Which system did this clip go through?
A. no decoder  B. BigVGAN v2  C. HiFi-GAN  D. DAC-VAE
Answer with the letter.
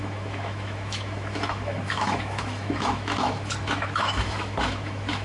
D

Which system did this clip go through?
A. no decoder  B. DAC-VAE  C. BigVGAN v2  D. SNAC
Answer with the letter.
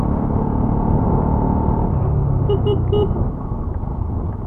A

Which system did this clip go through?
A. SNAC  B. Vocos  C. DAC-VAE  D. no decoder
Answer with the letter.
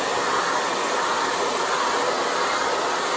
D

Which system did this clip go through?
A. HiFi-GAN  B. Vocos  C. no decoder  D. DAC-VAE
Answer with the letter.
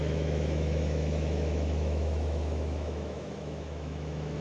D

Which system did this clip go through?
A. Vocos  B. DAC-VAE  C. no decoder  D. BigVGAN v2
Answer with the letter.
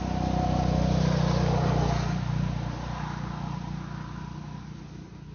C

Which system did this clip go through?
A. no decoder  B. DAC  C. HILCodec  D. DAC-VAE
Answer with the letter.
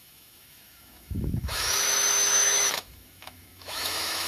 D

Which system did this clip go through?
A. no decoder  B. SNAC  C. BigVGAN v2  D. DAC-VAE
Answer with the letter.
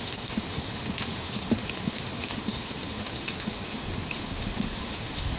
D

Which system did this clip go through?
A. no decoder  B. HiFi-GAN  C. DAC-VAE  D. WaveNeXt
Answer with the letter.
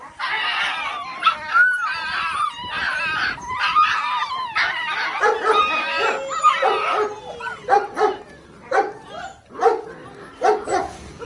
A